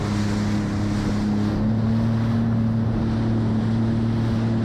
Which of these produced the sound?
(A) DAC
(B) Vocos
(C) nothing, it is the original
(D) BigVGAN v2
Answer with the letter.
C